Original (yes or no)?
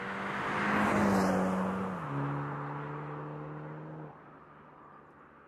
yes